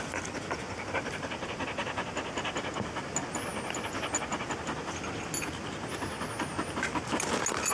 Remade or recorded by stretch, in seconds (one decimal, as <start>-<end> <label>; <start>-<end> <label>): 0.0-7.7 recorded